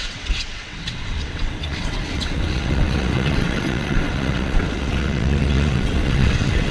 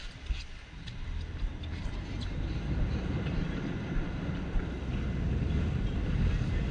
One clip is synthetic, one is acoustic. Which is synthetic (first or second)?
first